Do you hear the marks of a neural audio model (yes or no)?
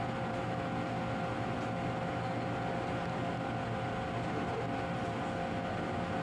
no